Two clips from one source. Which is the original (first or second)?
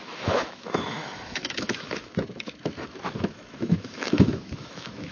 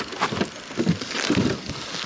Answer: second